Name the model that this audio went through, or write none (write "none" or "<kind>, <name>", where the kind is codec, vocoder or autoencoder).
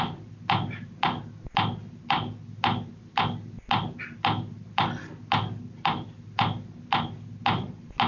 none